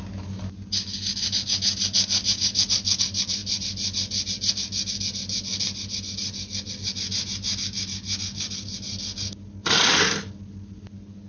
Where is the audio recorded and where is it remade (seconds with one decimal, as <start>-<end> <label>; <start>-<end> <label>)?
0.0-11.3 recorded